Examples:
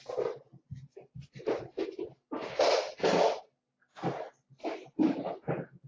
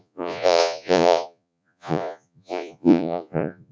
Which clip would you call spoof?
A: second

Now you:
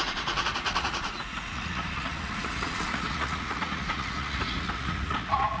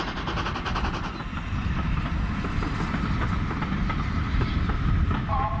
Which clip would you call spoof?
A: first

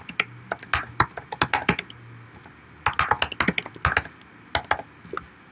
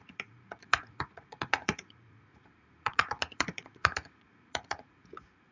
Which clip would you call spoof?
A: second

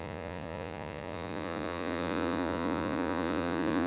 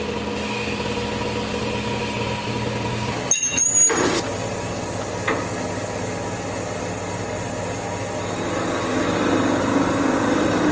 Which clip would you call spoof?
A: first